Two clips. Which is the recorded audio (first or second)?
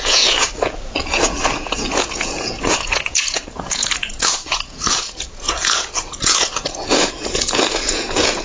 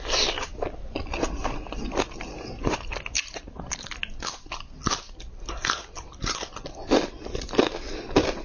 second